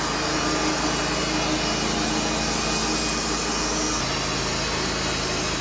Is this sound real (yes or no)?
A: yes